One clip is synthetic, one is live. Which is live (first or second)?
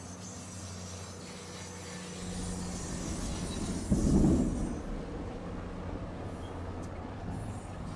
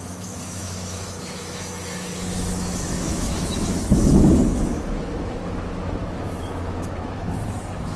first